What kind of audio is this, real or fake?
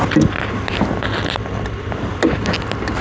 real